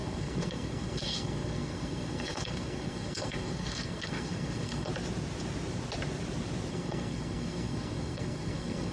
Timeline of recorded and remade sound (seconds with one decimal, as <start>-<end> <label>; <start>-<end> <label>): 0.0-4.9 remade; 4.9-6.7 recorded; 6.7-8.9 remade